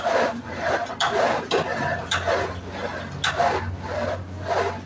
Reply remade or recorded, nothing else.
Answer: recorded